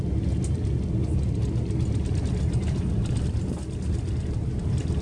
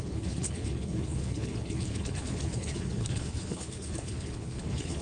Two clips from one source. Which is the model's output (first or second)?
second